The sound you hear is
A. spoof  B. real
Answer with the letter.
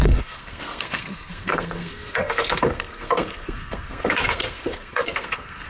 A